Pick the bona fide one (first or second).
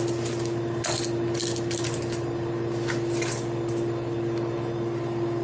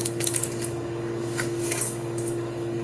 first